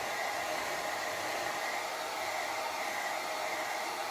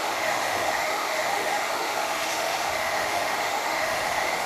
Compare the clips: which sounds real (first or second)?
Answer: first